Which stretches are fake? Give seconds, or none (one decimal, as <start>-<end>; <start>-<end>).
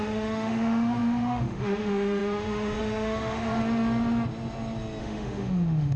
0.0-3.6; 5.0-6.0